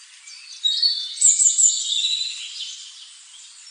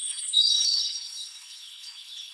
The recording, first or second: first